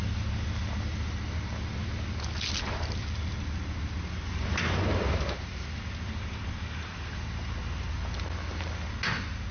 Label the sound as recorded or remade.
recorded